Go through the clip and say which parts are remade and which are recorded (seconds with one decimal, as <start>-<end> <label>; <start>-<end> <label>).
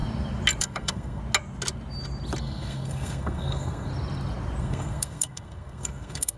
0.0-0.6 recorded; 0.6-1.2 remade; 1.2-2.4 recorded; 2.4-3.9 remade; 3.9-4.6 recorded; 4.6-6.4 remade